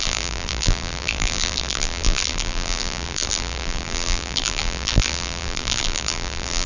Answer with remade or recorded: remade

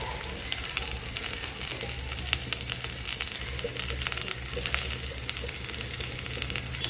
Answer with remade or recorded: recorded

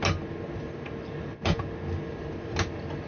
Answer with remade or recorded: recorded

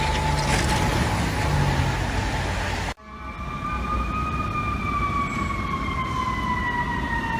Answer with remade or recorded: recorded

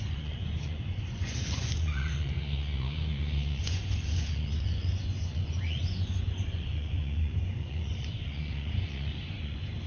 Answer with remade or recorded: remade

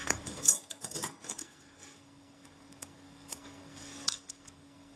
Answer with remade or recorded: remade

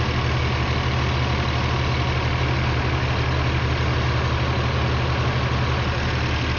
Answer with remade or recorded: recorded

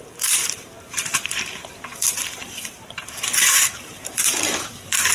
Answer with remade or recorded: remade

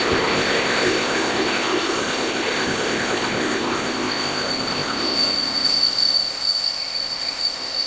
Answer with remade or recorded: remade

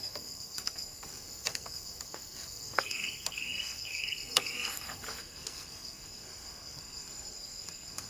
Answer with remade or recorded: remade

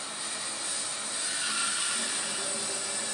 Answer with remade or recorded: recorded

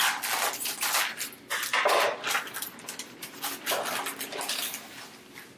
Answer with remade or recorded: recorded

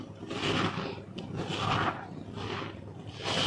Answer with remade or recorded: recorded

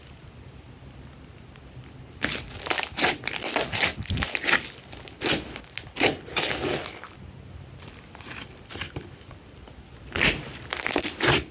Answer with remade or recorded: recorded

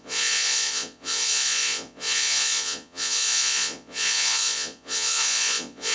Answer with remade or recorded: remade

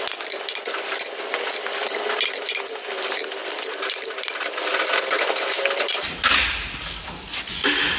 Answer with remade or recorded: recorded